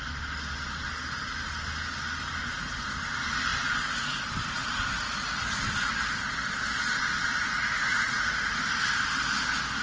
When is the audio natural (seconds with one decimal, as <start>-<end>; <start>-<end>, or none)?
0.0-7.3; 8.8-9.8